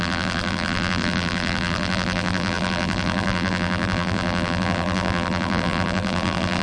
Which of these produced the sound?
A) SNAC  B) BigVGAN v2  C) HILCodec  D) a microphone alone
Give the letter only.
B